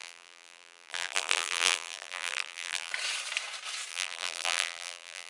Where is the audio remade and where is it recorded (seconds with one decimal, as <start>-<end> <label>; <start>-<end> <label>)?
0.0-2.9 remade; 2.9-3.9 recorded; 3.9-5.3 remade

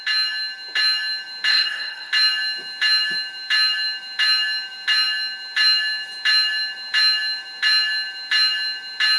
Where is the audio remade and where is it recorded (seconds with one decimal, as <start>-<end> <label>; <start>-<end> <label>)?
0.0-1.5 recorded; 1.5-2.1 remade; 2.1-9.2 recorded